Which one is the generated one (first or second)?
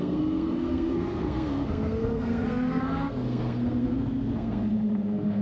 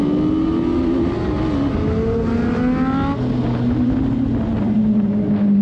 first